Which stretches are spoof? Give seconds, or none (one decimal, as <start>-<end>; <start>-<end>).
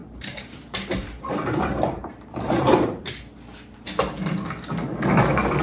0.0-3.1